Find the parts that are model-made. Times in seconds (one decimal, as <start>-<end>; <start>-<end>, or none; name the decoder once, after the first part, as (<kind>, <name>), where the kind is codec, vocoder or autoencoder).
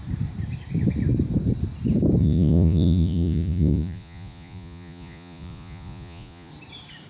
2.2-6.5 (vocoder, Vocos)